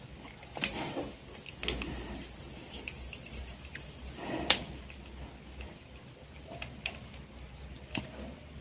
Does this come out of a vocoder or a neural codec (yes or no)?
no